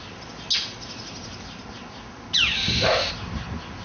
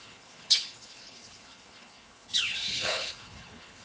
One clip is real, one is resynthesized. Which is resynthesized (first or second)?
second